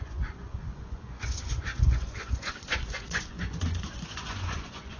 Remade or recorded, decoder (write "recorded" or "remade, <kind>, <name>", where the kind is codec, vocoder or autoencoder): remade, vocoder, Vocos